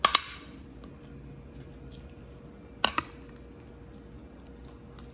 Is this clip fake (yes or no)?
no